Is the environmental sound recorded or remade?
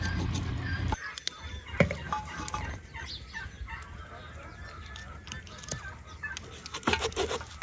recorded